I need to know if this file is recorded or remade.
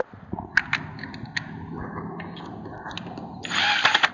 recorded